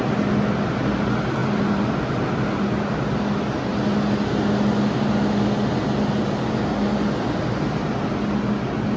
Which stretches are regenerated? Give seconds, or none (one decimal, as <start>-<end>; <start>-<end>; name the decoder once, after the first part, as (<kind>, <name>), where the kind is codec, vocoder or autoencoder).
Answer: 1.4-3.0 (vocoder, BigVGAN v2)